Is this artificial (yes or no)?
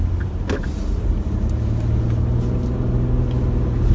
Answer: no